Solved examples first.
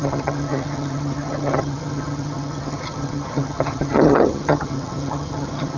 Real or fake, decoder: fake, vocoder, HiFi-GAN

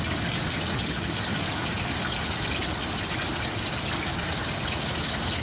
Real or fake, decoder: real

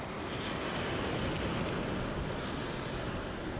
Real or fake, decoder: real